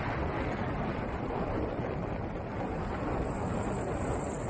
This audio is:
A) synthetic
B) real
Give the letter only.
A